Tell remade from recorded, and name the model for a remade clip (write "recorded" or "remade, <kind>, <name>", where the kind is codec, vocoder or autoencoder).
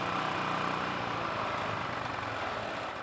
recorded